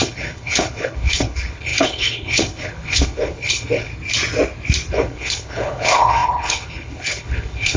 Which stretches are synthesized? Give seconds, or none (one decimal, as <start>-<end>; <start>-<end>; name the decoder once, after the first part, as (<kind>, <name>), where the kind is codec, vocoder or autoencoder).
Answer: 0.0-3.9 (codec, HILCodec); 4.9-7.8